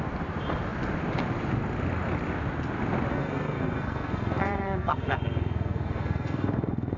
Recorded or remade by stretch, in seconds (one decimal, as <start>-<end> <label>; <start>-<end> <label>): 0.0-3.1 recorded; 3.1-7.0 remade